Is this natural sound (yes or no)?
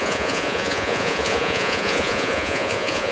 no